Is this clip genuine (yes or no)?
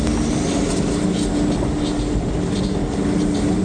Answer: yes